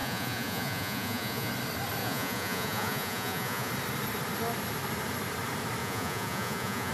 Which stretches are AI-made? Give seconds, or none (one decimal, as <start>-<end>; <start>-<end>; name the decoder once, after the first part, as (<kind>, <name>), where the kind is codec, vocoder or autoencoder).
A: 0.0-1.5 (vocoder, Vocos); 2.0-3.7; 5.8-6.9